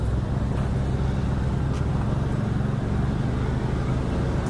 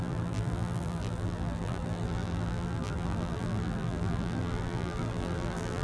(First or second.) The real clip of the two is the first